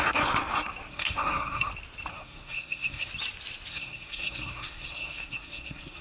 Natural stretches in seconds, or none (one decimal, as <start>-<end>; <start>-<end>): 0.0-0.9; 1.7-2.1; 3.1-3.7